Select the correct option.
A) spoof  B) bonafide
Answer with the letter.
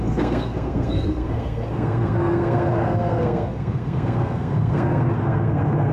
A